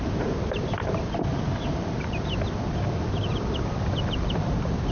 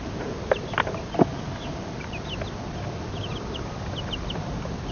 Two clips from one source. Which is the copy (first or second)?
first